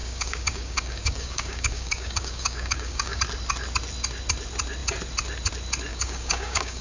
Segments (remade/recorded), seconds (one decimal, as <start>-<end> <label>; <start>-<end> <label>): 0.0-3.2 remade; 3.2-5.9 recorded; 5.9-6.8 remade